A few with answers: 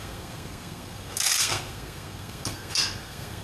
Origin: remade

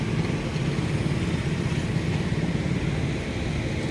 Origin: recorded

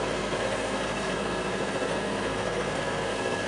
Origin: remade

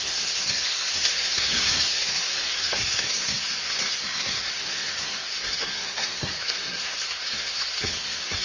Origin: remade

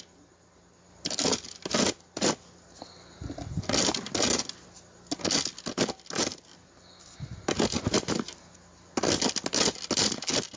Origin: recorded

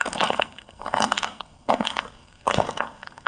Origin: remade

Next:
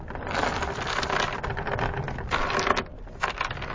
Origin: recorded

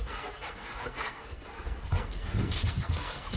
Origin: remade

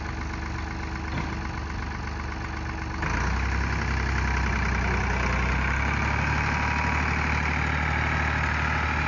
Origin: recorded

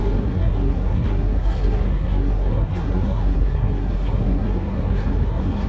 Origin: remade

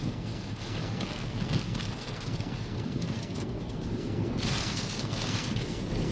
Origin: remade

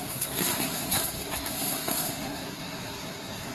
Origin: remade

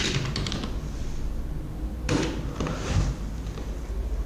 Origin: recorded